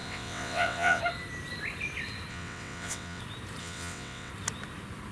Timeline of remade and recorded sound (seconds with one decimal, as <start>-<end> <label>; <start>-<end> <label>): 0.0-1.0 remade; 1.0-2.3 recorded; 2.3-3.2 remade; 3.2-3.6 recorded; 3.6-4.3 remade; 4.3-5.1 recorded